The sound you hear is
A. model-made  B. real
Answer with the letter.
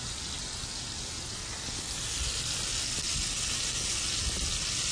B